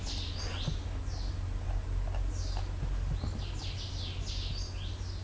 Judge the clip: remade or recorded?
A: recorded